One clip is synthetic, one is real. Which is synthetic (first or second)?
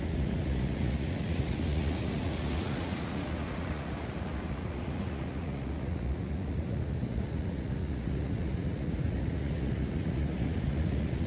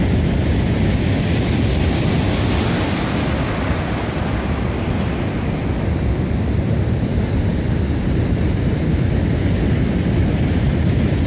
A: first